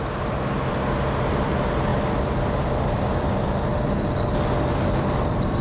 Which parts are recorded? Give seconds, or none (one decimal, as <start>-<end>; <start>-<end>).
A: 0.0-5.6